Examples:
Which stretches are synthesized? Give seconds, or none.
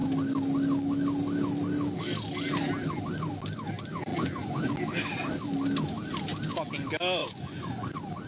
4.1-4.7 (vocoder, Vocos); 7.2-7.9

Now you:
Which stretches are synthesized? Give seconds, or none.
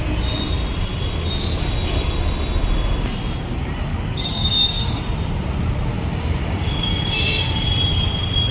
3.9-5.0 (codec, DAC); 6.4-6.9